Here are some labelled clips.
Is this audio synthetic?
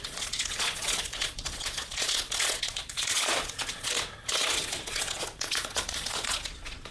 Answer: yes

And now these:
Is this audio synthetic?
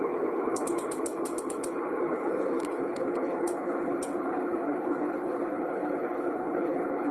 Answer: yes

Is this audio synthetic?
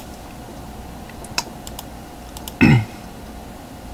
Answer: no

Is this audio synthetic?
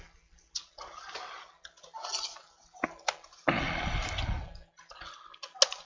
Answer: no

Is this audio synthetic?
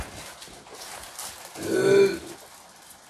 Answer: no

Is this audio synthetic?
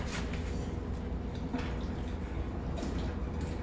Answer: no